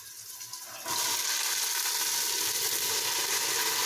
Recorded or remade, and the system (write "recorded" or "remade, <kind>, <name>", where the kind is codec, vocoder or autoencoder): recorded